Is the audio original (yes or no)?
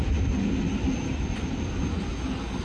yes